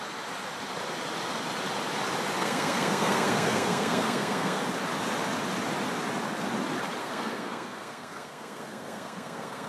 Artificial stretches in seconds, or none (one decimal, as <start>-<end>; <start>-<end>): 2.4-4.6; 7.0-9.7